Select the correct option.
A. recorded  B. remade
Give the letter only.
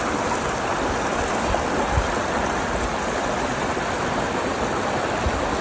A